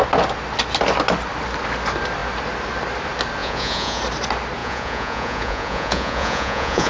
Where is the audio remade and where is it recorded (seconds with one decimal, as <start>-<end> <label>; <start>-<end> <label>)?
0.0-3.4 recorded; 3.4-4.0 remade; 4.0-4.6 recorded; 4.6-6.9 remade